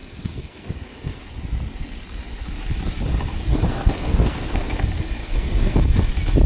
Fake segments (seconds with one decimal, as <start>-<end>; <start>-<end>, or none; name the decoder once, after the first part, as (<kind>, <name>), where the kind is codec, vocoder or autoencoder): 0.0-1.2 (codec, SNAC); 3.5-4.8; 5.2-6.1